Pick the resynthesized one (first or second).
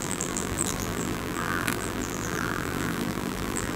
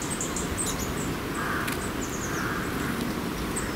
first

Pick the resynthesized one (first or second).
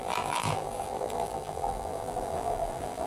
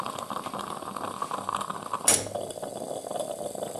first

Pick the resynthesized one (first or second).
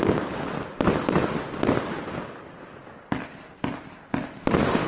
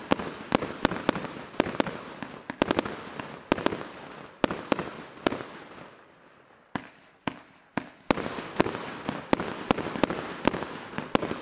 first